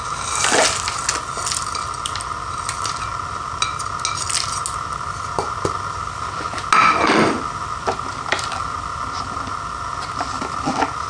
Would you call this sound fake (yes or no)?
no